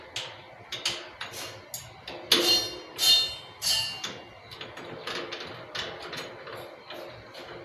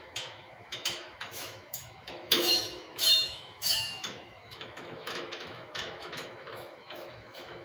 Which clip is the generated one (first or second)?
second